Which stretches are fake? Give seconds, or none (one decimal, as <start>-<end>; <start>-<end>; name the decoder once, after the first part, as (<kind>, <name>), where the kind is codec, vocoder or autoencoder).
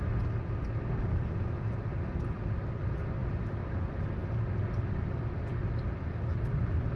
none